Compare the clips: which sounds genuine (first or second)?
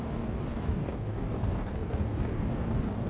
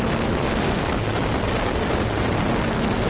second